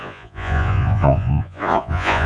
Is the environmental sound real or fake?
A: fake